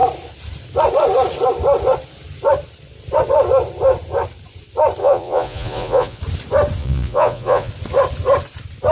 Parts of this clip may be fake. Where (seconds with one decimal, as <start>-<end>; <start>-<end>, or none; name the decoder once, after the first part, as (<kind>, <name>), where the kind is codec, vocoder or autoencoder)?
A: 5.0-6.2 (vocoder, Vocos); 6.8-7.7